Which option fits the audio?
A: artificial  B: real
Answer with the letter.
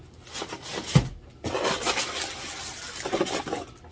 B